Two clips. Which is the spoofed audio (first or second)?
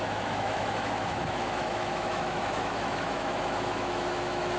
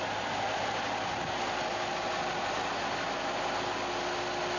first